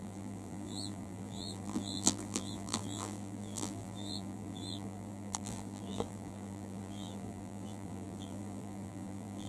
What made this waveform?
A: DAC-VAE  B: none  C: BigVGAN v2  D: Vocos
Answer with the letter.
C